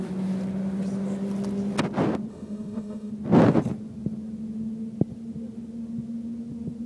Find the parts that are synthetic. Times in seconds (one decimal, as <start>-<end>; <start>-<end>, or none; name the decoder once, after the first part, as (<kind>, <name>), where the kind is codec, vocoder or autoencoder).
2.3-3.1 (autoencoder, DAC-VAE)